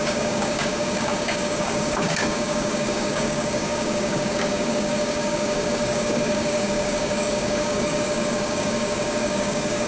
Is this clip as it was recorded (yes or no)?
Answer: no